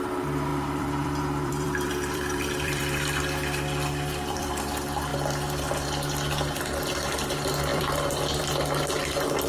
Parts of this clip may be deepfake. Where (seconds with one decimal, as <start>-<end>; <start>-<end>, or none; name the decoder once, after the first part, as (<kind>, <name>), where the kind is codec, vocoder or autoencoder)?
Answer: 0.5-4.6 (vocoder, BigVGAN v2); 7.7-8.5